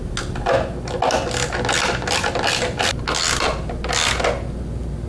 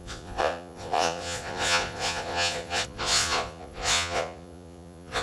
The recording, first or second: first